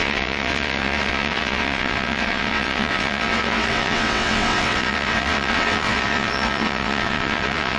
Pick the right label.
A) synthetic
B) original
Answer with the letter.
A